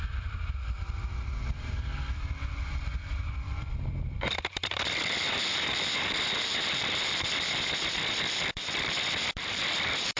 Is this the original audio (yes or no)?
no